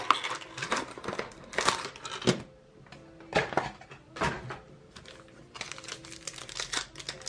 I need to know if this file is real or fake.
real